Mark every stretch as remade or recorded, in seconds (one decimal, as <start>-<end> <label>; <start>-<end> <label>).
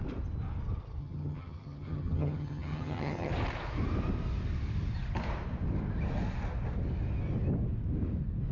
0.0-1.0 recorded; 1.0-3.3 remade; 3.3-8.5 recorded